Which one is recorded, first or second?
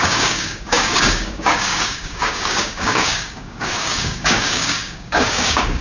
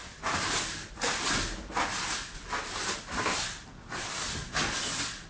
second